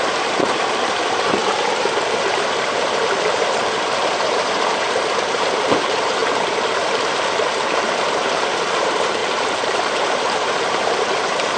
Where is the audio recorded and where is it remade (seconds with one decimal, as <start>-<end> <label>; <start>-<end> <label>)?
0.0-9.2 remade; 9.2-9.8 recorded; 9.8-11.6 remade

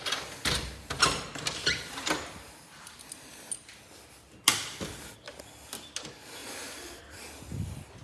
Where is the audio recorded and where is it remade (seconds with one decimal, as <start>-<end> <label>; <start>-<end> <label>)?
0.0-6.4 recorded; 6.4-7.0 remade; 7.0-8.0 recorded

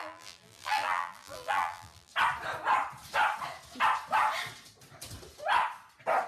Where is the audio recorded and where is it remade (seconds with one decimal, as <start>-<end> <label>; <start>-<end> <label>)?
0.0-2.1 remade; 2.1-6.3 recorded

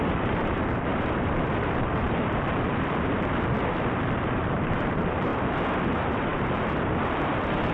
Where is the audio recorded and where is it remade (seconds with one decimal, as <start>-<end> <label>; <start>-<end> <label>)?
0.0-5.3 remade; 5.3-5.8 recorded; 5.8-7.7 remade

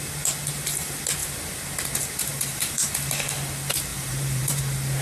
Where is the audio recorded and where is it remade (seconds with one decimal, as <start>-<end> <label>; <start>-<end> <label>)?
0.0-2.3 recorded; 2.3-3.0 remade; 3.0-3.9 recorded; 3.9-4.6 remade; 4.6-5.0 recorded

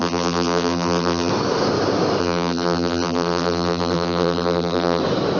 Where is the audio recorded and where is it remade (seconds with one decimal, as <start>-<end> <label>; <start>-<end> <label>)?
0.0-1.3 remade; 1.3-2.2 recorded; 2.2-5.0 remade; 5.0-5.4 recorded

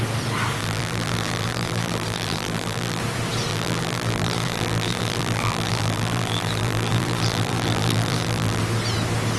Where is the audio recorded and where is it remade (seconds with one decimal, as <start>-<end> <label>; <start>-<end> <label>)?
0.0-0.6 recorded; 0.6-3.0 remade; 3.0-3.5 recorded; 3.5-8.6 remade; 8.6-9.4 recorded

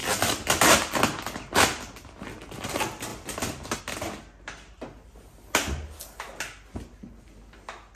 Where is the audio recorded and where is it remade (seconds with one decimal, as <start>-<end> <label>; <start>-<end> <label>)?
0.0-8.0 recorded